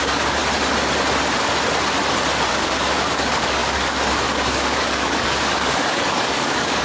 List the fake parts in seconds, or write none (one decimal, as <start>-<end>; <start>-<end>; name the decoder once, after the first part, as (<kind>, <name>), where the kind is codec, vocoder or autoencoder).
0.0-0.4 (codec, DAC); 2.5-6.8